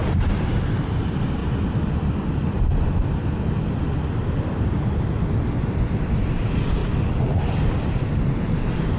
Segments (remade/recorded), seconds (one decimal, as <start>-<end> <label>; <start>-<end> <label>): 0.0-1.4 remade; 1.4-5.9 recorded; 5.9-6.8 remade; 6.8-7.8 recorded; 7.8-9.0 remade